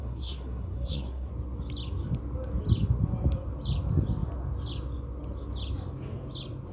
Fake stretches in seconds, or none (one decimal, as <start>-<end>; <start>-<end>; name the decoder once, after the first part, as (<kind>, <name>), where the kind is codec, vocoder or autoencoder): 0.0-1.3 (codec, SNAC)